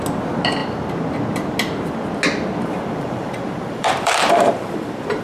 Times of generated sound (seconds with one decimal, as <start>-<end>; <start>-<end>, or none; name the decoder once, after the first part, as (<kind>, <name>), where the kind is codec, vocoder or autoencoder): 2.7-5.2 (vocoder, BigVGAN v2)